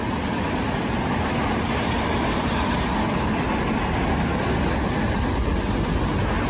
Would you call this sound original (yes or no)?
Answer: yes